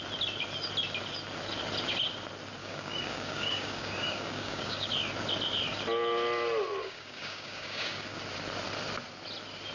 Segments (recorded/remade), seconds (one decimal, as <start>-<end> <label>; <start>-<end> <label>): 0.0-2.6 recorded; 2.6-4.9 remade; 4.9-6.8 recorded; 6.8-8.2 remade; 8.2-9.7 recorded